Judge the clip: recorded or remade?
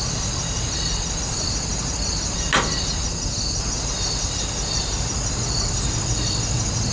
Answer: recorded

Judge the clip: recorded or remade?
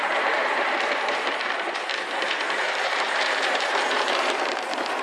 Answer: remade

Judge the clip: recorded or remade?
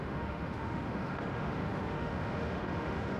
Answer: remade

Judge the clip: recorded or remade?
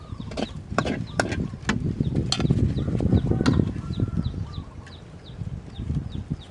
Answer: recorded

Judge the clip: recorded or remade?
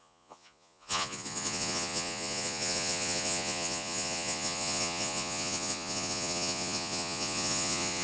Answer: remade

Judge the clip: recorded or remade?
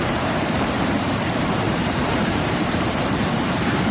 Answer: remade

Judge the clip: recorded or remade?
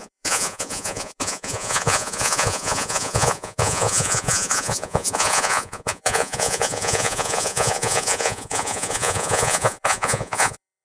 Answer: remade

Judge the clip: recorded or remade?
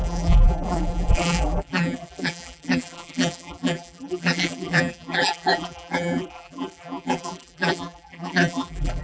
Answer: remade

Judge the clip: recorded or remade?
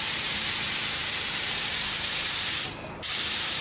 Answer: remade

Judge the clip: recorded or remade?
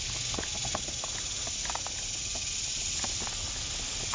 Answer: recorded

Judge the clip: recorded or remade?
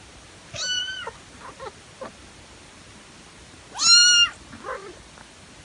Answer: recorded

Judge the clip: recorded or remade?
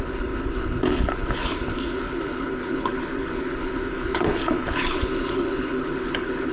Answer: remade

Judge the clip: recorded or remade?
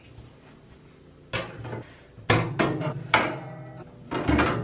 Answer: recorded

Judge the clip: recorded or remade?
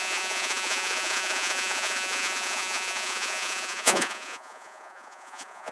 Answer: remade